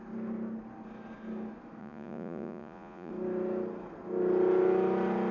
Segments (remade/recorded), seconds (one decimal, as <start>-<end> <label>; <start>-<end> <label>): 0.0-1.8 recorded; 1.8-3.1 remade; 3.1-5.3 recorded